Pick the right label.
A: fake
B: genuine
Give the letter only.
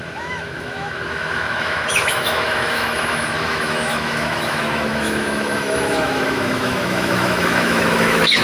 A